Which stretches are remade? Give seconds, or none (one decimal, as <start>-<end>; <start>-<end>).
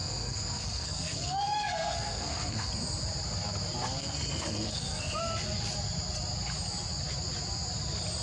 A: 0.0-2.7; 4.0-5.2